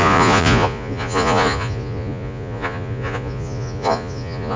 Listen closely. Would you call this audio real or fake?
fake